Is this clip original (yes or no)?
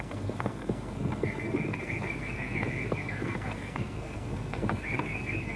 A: no